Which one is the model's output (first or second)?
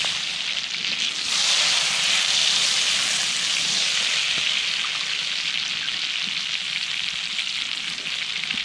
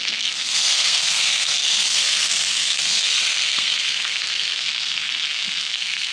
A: second